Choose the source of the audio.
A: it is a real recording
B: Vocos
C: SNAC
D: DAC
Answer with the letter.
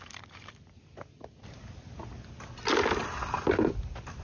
A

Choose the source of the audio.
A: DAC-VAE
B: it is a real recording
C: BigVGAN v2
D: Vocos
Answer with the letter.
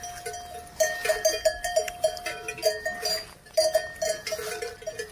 B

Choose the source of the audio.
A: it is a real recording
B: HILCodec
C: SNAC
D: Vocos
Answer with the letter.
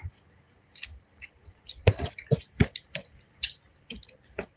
A